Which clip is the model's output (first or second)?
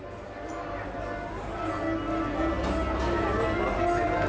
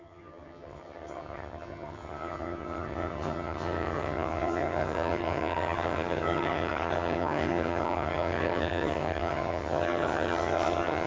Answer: second